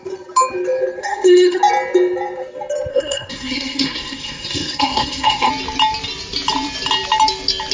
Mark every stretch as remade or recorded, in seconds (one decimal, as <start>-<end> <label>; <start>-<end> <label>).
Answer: 0.0-1.0 recorded; 1.0-1.6 remade; 1.6-2.9 recorded; 2.9-5.5 remade; 5.5-7.7 recorded